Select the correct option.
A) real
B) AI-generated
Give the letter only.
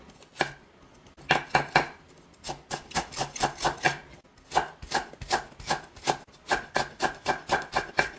A